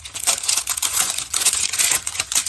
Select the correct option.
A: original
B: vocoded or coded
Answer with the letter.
B